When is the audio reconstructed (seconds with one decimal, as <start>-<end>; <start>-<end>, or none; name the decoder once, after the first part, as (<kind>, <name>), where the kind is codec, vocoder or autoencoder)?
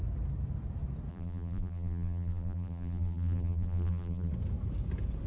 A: 1.1-4.3 (vocoder, BigVGAN v2)